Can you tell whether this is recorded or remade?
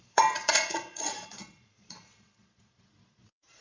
remade